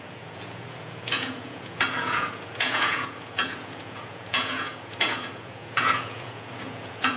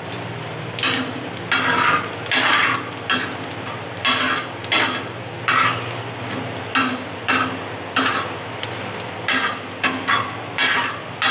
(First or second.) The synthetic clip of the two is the first